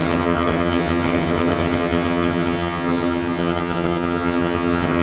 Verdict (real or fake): fake